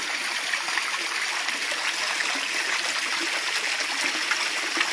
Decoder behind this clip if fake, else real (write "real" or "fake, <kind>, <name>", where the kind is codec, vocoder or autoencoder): real